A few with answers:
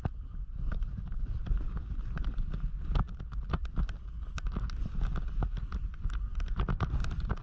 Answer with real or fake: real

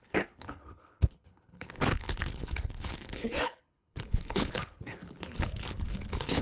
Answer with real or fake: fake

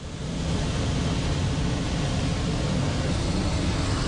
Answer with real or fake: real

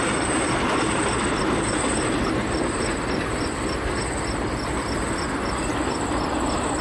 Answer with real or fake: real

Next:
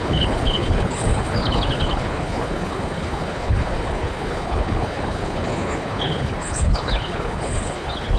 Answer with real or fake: fake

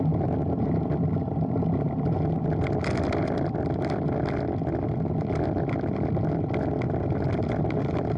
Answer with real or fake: real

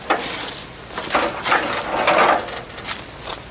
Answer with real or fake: real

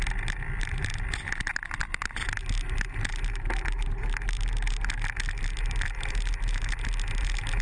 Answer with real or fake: real